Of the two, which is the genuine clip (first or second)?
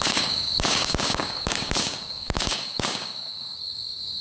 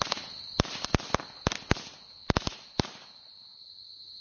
second